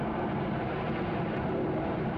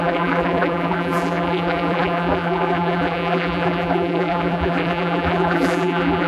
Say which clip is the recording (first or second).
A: first